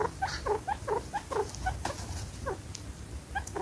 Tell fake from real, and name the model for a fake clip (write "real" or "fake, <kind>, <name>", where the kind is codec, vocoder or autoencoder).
real